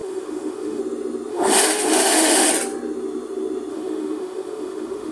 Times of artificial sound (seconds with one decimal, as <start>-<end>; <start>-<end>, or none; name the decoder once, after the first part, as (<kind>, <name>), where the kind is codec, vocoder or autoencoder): 0.0-0.8 (autoencoder, DAC-VAE); 1.3-2.5; 3.7-5.1